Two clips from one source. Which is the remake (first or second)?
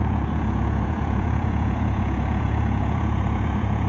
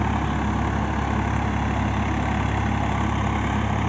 first